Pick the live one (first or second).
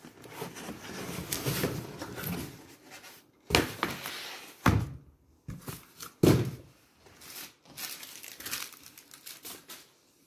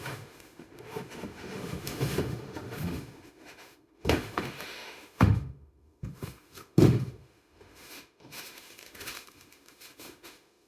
first